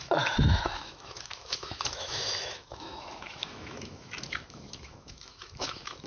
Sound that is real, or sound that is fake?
fake